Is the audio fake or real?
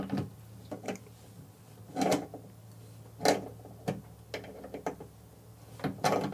real